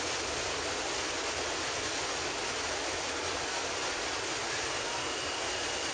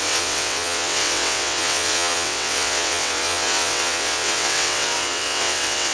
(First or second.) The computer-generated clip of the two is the second